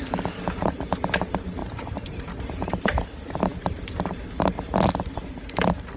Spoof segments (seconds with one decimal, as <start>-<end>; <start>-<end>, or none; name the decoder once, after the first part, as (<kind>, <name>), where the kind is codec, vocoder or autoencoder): none